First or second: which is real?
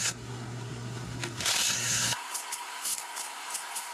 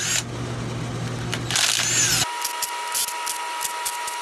second